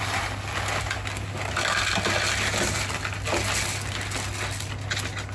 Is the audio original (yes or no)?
yes